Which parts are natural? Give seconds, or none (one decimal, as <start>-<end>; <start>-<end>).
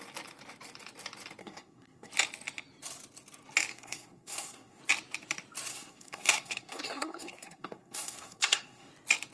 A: 0.0-1.4; 2.1-3.7; 4.8-5.7; 8.9-9.3